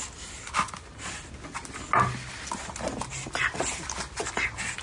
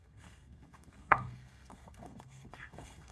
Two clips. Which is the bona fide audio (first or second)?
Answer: first